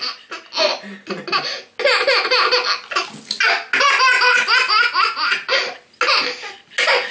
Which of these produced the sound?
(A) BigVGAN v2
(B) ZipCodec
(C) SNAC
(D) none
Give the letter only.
D